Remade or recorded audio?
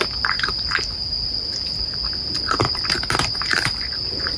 recorded